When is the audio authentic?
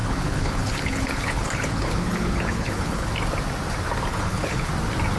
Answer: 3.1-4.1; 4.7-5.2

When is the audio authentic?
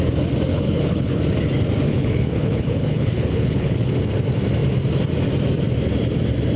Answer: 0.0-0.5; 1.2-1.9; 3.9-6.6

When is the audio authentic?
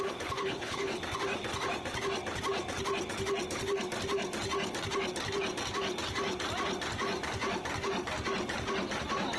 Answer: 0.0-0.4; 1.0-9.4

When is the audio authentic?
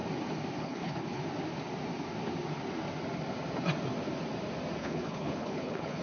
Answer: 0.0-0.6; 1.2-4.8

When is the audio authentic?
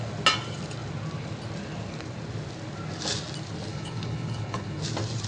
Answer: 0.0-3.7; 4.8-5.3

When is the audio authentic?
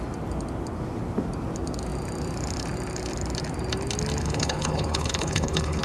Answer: 0.0-4.2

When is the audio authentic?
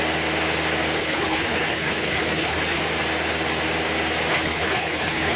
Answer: 0.0-1.0; 2.8-4.3